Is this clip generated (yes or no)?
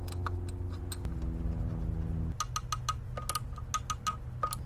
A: no